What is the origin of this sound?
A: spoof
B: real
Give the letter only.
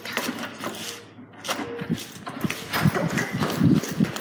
B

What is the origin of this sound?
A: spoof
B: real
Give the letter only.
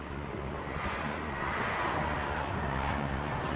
A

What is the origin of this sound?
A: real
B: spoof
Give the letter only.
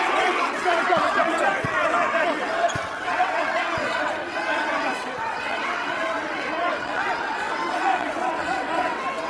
B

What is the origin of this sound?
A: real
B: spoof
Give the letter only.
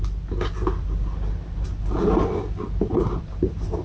A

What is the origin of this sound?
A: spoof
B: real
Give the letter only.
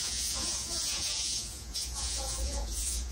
A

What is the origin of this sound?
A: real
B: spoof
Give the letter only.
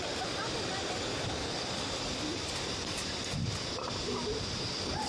A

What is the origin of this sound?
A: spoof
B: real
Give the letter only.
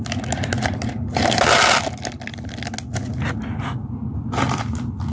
B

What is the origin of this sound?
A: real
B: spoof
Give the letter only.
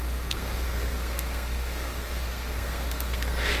B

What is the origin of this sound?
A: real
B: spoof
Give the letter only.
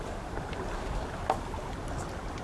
A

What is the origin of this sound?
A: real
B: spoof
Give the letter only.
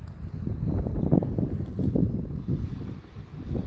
A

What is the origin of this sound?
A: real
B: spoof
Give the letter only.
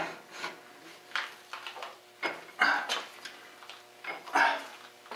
A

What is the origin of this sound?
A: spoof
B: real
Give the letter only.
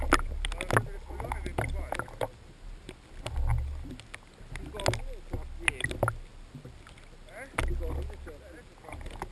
B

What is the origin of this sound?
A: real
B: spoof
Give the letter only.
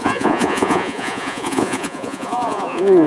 B